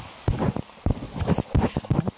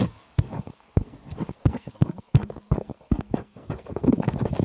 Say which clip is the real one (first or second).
first